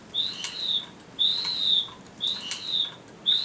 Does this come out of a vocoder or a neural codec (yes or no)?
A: no